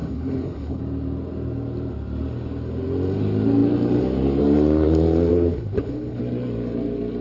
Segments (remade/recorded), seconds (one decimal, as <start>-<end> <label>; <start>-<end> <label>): 0.0-0.8 remade; 0.8-5.3 recorded; 5.3-6.2 remade; 6.2-7.2 recorded